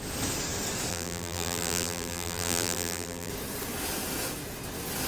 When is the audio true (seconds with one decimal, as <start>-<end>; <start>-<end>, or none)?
0.0-0.9; 3.3-5.1